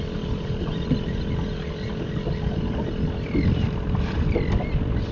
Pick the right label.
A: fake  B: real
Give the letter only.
A